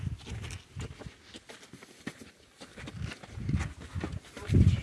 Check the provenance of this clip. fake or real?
real